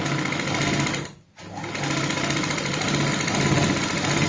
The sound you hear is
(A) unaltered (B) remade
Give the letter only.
A